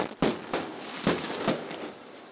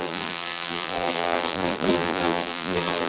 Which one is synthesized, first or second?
second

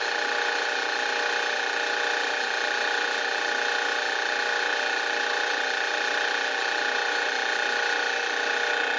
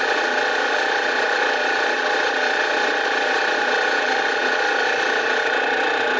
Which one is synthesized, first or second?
second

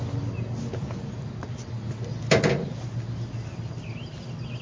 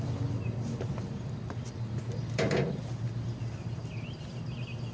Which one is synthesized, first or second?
second